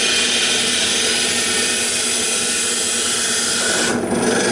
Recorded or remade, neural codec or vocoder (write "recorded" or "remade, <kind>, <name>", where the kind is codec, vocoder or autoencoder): recorded